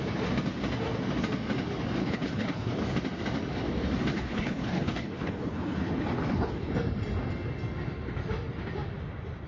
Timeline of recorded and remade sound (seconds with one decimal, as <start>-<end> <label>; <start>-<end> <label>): 0.0-2.0 recorded; 2.0-2.8 remade; 2.8-4.1 recorded; 4.1-6.7 remade; 6.7-9.5 recorded